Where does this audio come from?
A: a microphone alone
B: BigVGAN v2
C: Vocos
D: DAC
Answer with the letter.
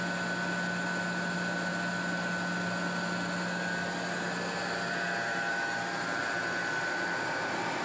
A